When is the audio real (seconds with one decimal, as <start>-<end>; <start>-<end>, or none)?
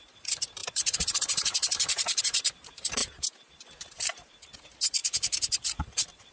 none